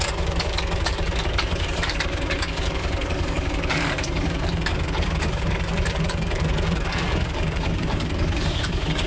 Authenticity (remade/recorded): remade